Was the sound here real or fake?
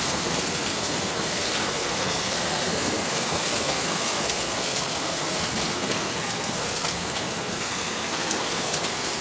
fake